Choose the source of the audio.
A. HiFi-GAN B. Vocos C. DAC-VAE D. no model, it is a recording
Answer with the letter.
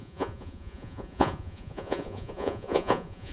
B